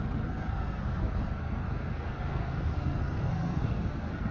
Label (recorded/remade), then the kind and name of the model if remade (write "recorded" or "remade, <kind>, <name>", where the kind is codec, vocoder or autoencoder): remade, codec, SNAC